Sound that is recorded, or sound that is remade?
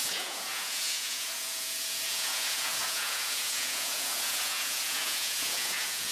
remade